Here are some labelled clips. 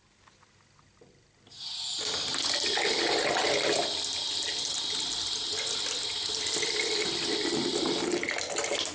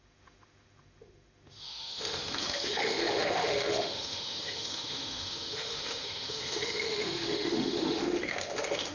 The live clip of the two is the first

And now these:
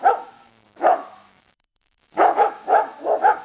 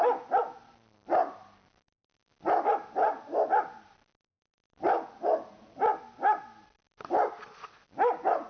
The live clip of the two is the second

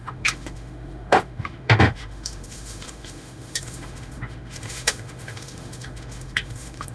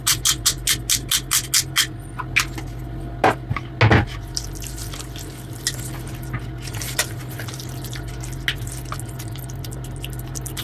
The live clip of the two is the second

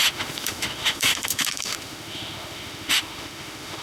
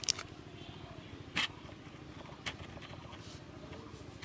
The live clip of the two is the second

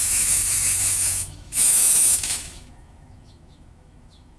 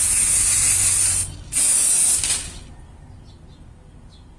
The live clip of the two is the second